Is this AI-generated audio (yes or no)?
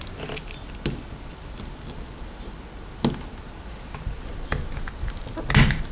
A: no